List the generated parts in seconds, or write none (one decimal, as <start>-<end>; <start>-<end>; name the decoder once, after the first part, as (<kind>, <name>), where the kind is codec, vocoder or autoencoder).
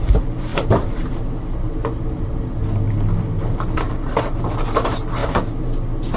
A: 0.5-1.2 (vocoder, BigVGAN v2)